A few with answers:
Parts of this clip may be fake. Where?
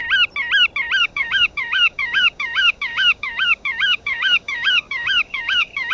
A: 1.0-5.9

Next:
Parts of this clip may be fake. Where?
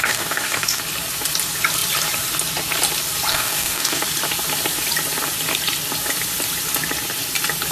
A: 0.0-0.8; 3.3-4.0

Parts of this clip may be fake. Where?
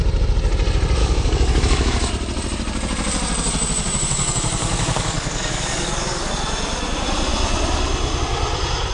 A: 1.0-2.1; 4.6-6.3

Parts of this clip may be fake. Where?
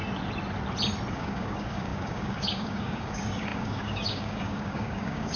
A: 1.1-5.4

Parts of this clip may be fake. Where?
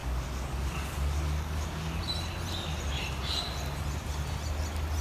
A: 0.0-2.0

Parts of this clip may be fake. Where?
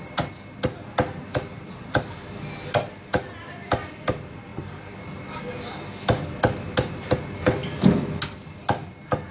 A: none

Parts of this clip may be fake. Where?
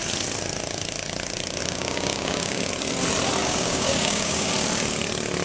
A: 1.6-2.7; 3.4-4.5